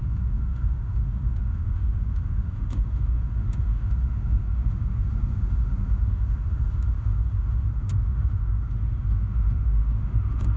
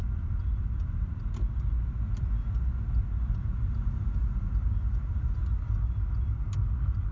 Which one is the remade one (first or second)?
first